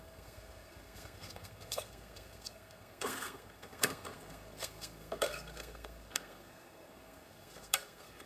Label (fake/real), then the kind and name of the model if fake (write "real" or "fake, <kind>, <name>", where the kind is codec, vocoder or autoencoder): fake, codec, SNAC